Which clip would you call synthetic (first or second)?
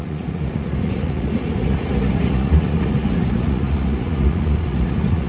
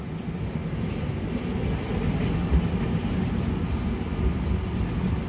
first